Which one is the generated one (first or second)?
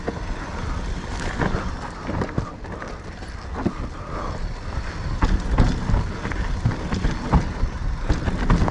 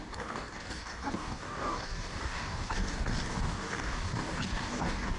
second